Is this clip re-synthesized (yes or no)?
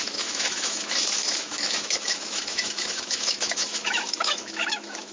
yes